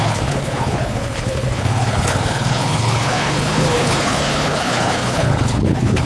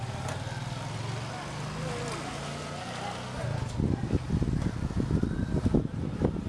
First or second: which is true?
second